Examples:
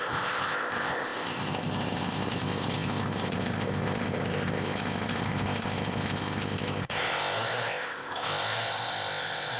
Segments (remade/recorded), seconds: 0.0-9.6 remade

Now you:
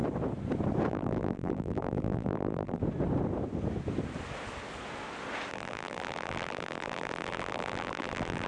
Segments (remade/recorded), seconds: 0.0-0.9 recorded; 0.9-2.8 remade; 2.8-5.5 recorded; 5.5-8.5 remade

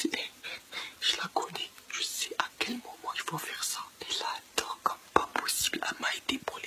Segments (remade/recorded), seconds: 0.0-2.5 remade; 2.5-6.7 recorded

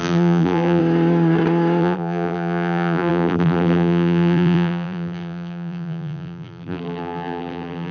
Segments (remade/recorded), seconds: 0.0-0.8 remade; 0.8-1.8 recorded; 1.8-7.9 remade

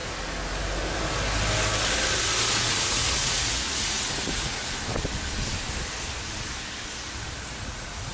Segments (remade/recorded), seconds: 0.0-2.5 recorded; 2.5-4.6 remade; 4.6-7.5 recorded; 7.5-8.1 remade

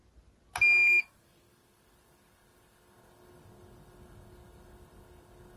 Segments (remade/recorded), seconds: 0.0-5.6 recorded

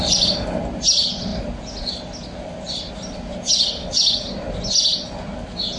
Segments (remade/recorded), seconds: 0.0-5.8 recorded